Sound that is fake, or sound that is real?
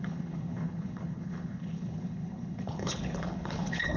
fake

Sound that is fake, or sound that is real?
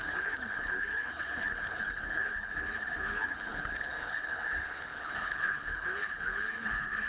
fake